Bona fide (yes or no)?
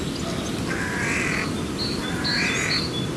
yes